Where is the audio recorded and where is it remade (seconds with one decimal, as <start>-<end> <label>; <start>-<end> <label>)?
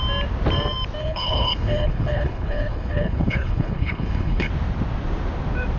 0.0-1.0 recorded; 1.0-4.5 remade; 4.5-5.8 recorded